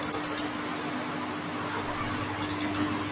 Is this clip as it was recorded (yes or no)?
yes